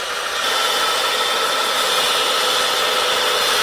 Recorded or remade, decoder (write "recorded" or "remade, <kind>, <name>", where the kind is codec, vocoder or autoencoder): recorded